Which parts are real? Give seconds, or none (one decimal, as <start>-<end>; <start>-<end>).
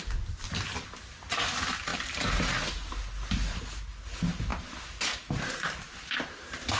0.0-1.9; 3.6-4.5; 6.0-6.8